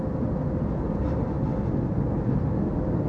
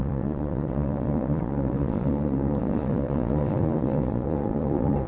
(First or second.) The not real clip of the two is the second